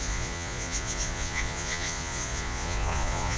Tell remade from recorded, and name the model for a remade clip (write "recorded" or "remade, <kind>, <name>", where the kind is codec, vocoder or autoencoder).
remade, vocoder, Vocos